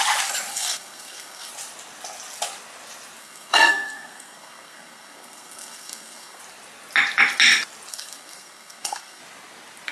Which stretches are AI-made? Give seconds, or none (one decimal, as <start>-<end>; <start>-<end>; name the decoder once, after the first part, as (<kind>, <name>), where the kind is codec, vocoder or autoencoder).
0.5-1.5 (codec, SNAC); 3.2-6.4; 7.9-9.2

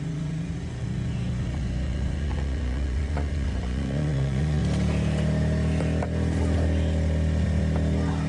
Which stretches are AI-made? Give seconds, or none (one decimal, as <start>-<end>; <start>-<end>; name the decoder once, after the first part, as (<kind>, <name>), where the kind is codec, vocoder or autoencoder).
0.0-4.6 (vocoder, Vocos)

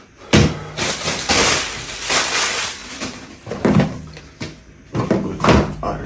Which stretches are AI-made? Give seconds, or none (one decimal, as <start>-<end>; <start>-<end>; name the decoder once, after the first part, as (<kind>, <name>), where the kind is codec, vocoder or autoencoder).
2.8-4.2 (vocoder, BigVGAN v2)

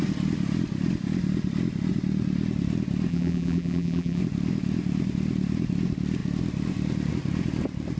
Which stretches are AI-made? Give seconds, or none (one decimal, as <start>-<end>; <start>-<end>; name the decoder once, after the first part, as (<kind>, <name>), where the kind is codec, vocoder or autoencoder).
3.1-4.2 (vocoder, BigVGAN v2)

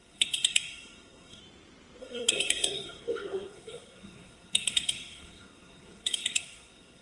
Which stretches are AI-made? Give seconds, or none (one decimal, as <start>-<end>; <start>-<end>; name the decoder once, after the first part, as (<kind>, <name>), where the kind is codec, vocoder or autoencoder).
0.0-1.4 (codec, SNAC); 2.0-7.0